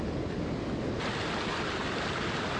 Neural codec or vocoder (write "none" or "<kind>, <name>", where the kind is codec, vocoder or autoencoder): none